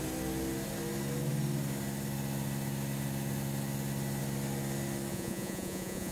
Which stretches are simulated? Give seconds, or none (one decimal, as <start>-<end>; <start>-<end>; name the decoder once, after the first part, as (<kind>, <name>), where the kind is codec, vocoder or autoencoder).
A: 5.1-6.1 (vocoder, Vocos)